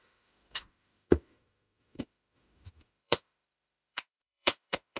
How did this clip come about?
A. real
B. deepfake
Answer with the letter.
B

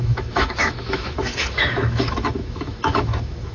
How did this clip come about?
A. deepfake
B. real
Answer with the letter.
A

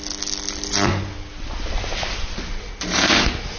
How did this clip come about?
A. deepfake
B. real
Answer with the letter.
B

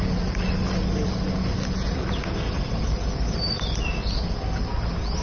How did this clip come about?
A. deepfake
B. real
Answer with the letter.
B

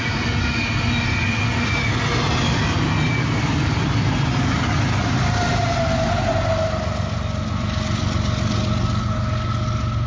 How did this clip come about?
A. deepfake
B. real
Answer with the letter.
B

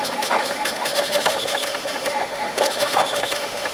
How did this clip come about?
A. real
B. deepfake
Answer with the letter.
B